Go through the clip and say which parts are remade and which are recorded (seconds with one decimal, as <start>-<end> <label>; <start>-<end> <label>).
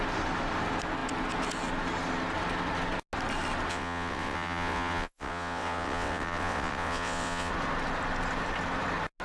0.0-3.7 recorded; 3.7-7.5 remade; 7.5-9.2 recorded